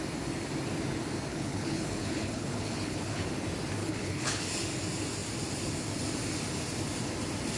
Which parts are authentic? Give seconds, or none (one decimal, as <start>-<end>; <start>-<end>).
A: 0.0-1.3; 3.3-3.8; 4.4-7.6